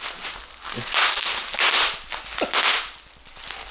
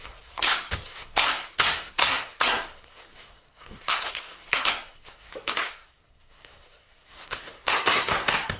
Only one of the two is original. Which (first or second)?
first